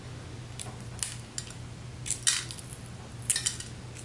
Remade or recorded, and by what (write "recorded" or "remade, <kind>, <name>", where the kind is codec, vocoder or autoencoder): recorded